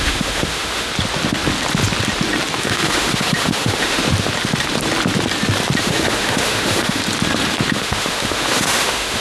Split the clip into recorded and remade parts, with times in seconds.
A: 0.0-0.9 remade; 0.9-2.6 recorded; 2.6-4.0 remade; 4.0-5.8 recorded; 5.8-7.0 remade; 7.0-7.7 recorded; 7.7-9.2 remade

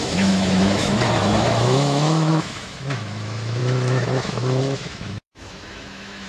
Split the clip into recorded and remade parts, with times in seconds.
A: 0.0-6.3 remade